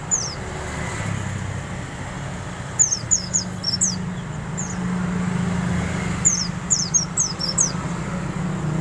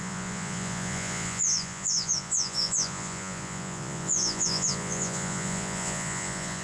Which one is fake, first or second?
second